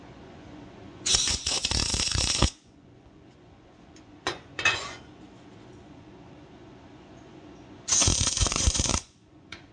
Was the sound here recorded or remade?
remade